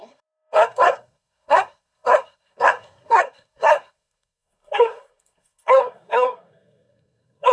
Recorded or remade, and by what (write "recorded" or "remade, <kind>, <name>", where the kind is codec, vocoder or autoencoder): remade, codec, SNAC